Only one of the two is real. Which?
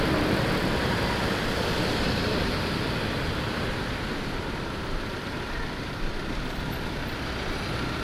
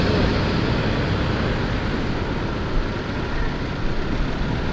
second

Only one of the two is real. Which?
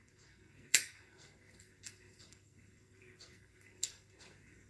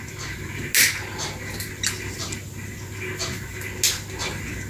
second